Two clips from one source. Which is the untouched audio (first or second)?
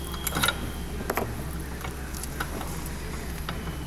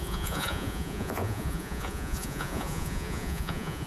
first